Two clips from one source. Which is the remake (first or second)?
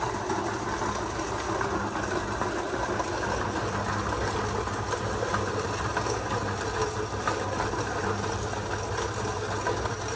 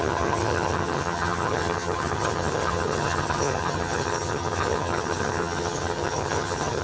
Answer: second